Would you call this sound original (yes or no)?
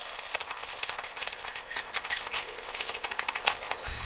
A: no